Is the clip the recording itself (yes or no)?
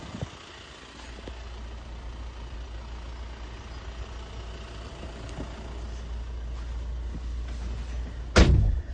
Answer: yes